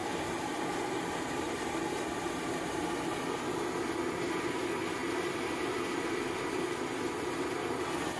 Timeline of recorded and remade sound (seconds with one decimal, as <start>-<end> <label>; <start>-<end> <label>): 0.0-2.8 remade; 2.8-8.2 recorded